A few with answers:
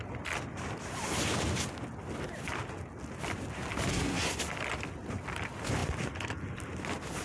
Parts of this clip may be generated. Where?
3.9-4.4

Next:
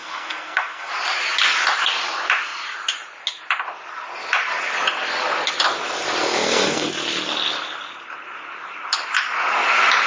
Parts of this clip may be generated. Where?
0.0-0.9; 6.2-6.9